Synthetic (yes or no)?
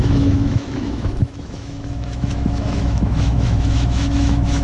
yes